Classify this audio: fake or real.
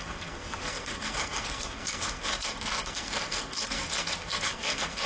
fake